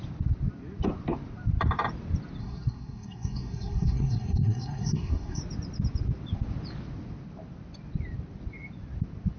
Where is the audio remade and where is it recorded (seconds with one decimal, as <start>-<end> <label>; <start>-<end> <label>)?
0.0-2.4 recorded; 2.4-5.4 remade; 5.4-9.4 recorded